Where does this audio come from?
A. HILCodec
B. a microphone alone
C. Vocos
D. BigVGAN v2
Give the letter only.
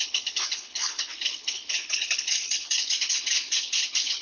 A